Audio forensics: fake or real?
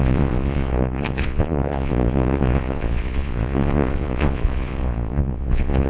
fake